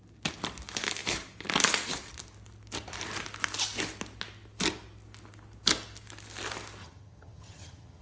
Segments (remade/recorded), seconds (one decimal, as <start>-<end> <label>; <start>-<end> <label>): 0.0-6.8 recorded; 6.8-8.0 remade